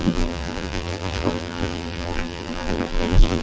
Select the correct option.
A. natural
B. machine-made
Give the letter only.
B